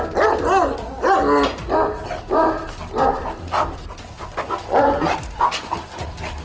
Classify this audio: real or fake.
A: real